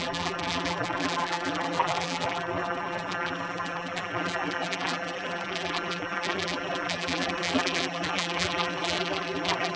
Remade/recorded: remade